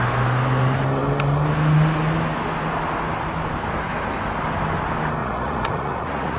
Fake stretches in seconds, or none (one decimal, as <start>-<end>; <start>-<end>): 5.2-6.4